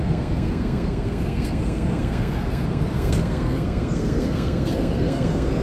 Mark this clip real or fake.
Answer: fake